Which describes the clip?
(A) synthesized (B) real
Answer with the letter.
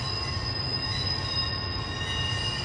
B